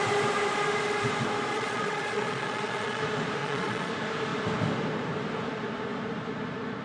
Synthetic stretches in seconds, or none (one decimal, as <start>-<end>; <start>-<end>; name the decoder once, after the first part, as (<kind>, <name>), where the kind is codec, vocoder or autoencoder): 1.5-3.0 (vocoder, Vocos); 3.4-3.9